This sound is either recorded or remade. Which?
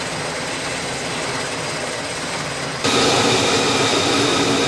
recorded